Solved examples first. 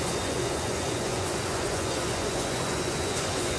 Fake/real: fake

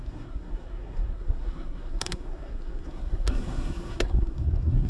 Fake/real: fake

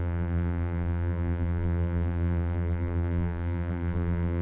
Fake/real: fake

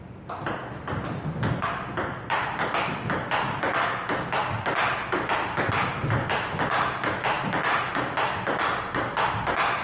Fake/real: real